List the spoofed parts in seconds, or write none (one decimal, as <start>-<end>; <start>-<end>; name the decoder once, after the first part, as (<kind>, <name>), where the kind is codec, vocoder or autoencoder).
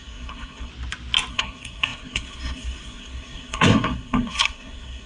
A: 0.0-0.7 (codec, SNAC); 1.3-5.1